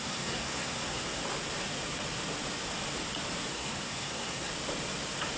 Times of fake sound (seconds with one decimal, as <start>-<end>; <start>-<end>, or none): 0.0-1.2; 3.5-4.5